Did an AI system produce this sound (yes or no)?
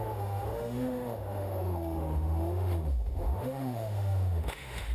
yes